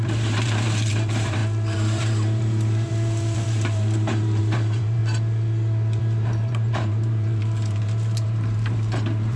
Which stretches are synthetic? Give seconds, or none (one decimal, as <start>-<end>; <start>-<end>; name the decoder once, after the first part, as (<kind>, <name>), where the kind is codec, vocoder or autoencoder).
0.0-5.0 (vocoder, BigVGAN v2); 6.0-9.4